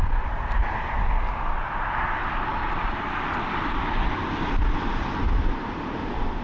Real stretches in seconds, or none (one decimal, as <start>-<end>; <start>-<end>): 0.0-6.4